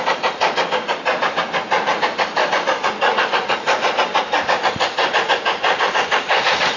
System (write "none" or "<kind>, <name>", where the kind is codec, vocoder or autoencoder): none